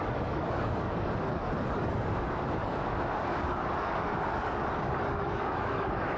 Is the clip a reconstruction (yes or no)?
yes